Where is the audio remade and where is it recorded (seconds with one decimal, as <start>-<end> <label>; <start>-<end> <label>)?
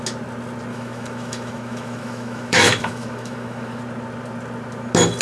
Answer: 0.0-0.7 recorded; 0.7-3.8 remade; 3.8-5.2 recorded